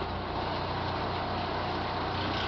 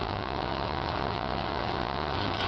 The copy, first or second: second